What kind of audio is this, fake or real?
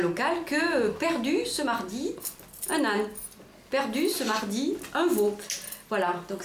real